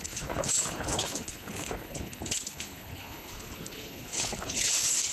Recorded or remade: remade